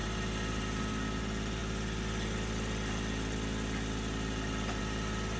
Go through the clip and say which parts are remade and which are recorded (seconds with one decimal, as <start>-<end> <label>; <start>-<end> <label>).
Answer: 0.0-5.4 recorded